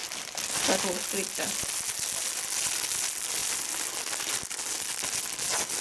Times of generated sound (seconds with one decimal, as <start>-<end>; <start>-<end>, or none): none

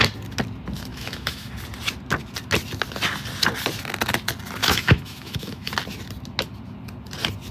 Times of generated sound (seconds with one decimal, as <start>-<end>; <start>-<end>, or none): 0.9-1.5; 4.6-5.7

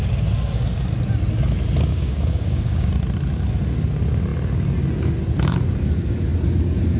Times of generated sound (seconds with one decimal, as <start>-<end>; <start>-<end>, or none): 1.9-2.9

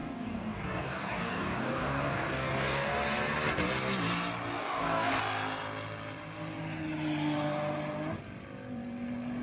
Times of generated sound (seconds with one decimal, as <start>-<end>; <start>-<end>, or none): 0.0-2.9; 4.6-5.2

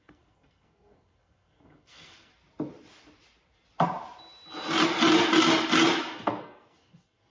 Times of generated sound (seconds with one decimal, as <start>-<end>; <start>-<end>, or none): 0.0-2.3; 6.4-7.3